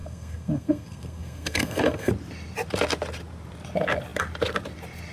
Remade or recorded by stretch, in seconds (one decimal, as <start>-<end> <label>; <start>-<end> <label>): 0.0-2.1 remade; 2.1-5.1 recorded